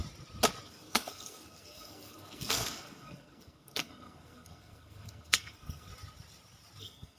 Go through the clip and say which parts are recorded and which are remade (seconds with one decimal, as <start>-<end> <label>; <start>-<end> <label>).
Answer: 0.0-0.7 recorded; 0.7-5.9 remade; 5.9-6.8 recorded; 6.8-7.2 remade